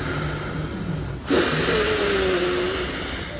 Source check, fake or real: real